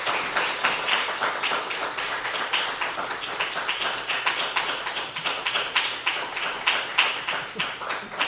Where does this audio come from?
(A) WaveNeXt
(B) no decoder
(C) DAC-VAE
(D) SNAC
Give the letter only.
B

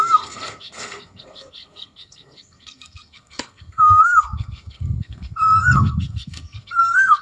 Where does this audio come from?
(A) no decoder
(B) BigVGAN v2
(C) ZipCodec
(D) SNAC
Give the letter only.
D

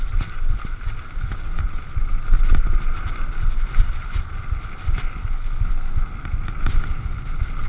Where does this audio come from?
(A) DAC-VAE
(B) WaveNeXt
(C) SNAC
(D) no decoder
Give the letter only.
D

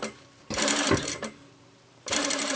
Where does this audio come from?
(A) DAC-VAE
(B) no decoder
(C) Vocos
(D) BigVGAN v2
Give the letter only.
D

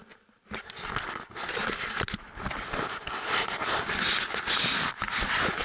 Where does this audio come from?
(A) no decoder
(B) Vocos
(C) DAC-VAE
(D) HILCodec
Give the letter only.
A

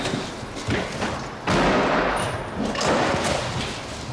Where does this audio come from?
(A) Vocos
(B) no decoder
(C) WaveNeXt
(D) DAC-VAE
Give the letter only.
B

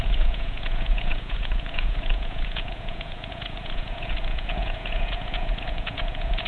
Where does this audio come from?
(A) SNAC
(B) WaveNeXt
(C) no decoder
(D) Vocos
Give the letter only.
D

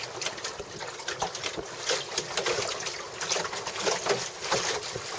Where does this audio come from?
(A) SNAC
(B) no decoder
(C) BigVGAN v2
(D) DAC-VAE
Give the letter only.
B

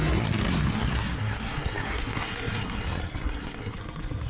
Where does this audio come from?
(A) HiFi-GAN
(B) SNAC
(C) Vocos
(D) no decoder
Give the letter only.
B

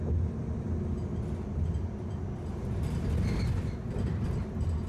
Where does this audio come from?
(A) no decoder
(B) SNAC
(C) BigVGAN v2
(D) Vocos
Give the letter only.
A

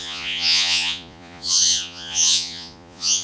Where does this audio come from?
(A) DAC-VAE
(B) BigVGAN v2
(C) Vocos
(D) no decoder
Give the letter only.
C